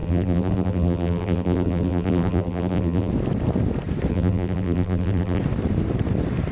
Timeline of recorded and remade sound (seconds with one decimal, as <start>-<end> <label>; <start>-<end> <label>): 0.0-3.1 remade; 3.1-4.1 recorded; 4.1-5.4 remade; 5.4-6.5 recorded